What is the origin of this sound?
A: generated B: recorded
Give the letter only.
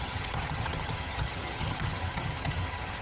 A